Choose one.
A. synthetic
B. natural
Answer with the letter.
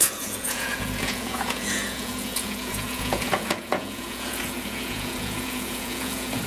A